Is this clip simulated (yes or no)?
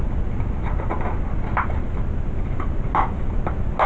no